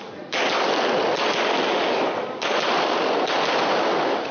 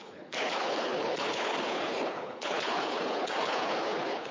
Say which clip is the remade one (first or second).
second